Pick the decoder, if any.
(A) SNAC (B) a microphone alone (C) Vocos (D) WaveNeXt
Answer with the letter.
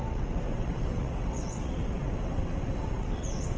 D